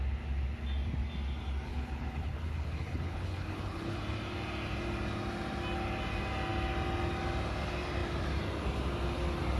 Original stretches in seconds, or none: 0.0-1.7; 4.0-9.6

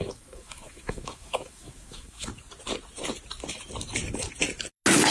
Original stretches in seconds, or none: 2.3-5.1

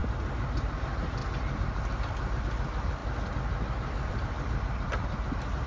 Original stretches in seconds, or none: 0.0-5.7

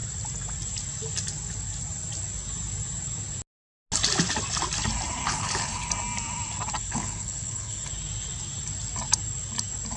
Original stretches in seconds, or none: 0.0-5.2; 5.9-6.8; 7.9-10.0

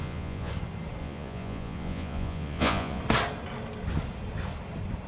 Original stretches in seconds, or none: 0.5-1.0; 3.0-5.1